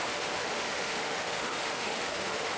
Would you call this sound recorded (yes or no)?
no